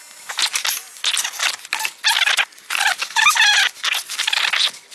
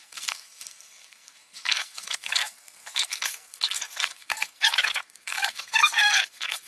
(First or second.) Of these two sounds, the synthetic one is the second